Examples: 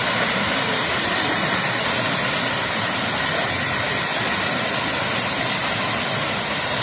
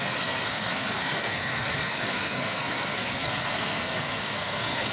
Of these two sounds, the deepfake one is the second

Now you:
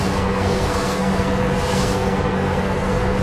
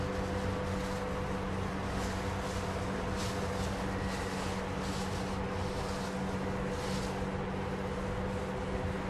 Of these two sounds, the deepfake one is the first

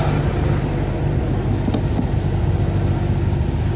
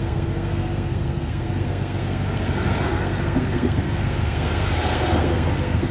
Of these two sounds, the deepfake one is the second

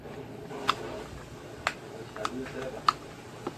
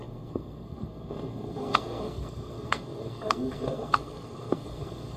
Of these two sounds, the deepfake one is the second